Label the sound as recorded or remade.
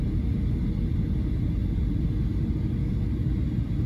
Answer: recorded